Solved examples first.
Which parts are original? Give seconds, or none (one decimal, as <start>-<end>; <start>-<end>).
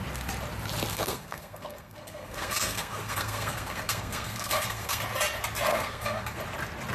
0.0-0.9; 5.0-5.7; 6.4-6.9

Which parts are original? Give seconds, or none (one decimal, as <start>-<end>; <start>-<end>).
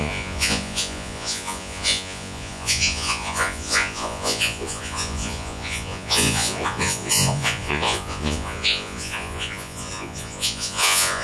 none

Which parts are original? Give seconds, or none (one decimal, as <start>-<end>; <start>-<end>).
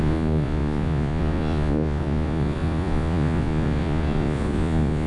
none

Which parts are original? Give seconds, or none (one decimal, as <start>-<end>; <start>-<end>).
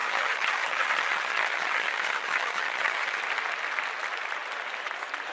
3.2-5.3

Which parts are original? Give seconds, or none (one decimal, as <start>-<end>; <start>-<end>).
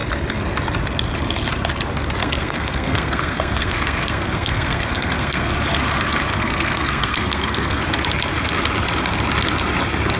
0.0-2.2; 5.5-6.3; 7.8-10.2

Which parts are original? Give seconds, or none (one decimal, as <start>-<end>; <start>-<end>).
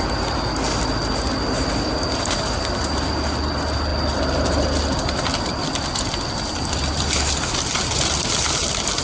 0.0-9.0